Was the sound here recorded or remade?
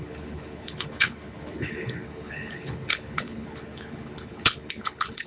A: remade